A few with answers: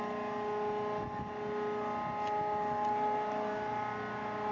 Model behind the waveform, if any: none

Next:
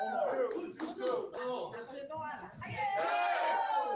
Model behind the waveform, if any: none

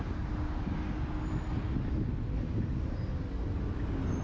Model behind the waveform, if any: none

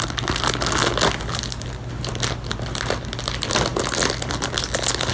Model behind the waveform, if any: none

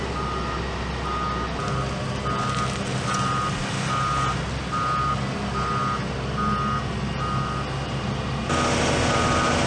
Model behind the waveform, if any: none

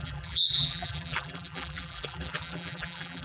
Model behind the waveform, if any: vocoder, BigVGAN v2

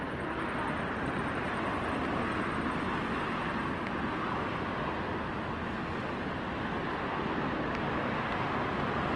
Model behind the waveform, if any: none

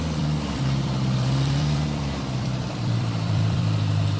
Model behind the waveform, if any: vocoder, BigVGAN v2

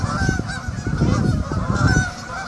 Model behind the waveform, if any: vocoder, BigVGAN v2